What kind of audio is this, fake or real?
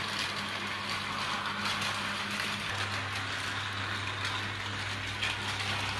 real